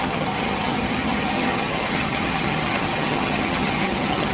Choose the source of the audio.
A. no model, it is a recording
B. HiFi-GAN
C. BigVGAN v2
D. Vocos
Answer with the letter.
B